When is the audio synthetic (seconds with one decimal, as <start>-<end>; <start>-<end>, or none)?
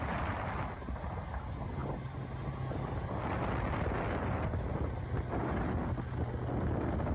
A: none